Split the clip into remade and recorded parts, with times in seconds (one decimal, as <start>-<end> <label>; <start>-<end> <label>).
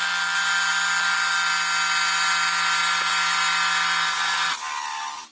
0.0-5.3 recorded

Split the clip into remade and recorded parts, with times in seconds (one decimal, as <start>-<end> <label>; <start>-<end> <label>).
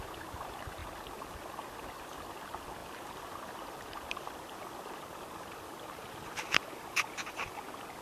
0.0-0.8 recorded; 0.8-1.5 remade; 1.5-2.8 recorded; 2.8-7.6 remade; 7.6-8.0 recorded